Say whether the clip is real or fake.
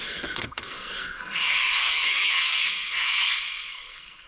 fake